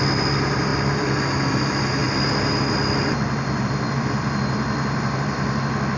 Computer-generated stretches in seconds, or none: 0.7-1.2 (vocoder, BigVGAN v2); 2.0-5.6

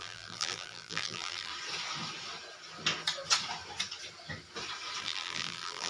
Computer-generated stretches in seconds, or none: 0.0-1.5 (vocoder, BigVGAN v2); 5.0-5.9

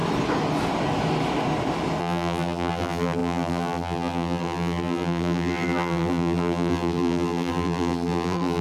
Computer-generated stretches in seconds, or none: 2.0-8.6 (vocoder, BigVGAN v2)

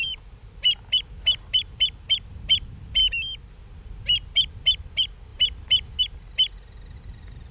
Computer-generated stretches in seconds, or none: 0.0-3.0 (vocoder, BigVGAN v2); 3.5-5.3; 6.0-7.5

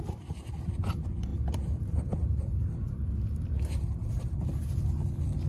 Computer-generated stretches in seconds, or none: 1.3-4.6 (vocoder, BigVGAN v2)

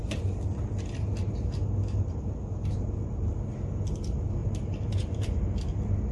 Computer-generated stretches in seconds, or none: 4.4-5.6 (vocoder, BigVGAN v2)